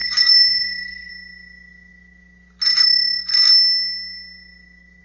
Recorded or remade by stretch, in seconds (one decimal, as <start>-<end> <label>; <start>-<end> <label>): 0.0-1.1 remade; 1.1-5.0 recorded